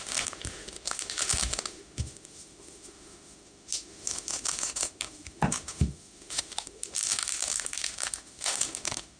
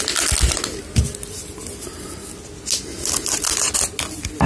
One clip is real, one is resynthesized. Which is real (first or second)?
second